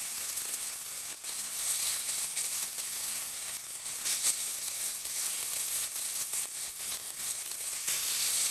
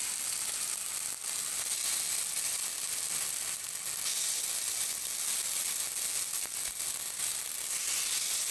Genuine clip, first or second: second